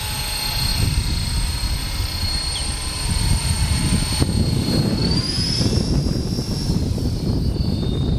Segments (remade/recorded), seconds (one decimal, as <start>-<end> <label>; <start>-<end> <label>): 0.0-0.7 recorded; 0.7-3.8 remade; 3.8-5.0 recorded; 5.0-8.2 remade